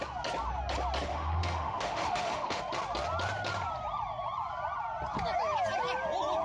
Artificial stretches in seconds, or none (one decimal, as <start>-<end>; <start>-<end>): 1.1-2.6